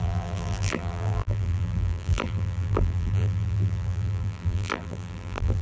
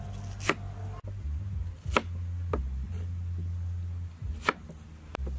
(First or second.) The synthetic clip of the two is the first